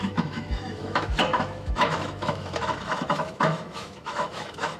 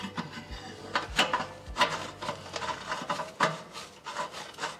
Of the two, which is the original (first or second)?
second